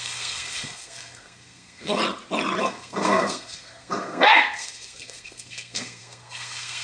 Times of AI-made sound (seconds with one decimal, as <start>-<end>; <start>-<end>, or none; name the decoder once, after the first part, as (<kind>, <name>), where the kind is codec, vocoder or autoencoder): 0.0-2.0 (codec, SNAC); 2.6-6.8